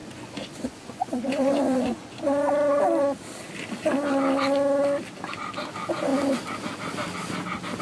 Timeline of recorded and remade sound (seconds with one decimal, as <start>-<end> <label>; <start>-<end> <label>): 0.0-2.5 remade; 2.5-7.8 recorded